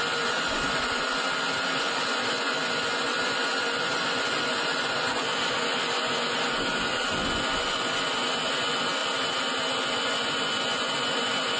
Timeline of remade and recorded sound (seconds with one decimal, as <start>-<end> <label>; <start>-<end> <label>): 0.0-1.1 remade; 1.1-1.8 recorded; 1.8-9.0 remade; 9.0-9.9 recorded; 9.9-11.6 remade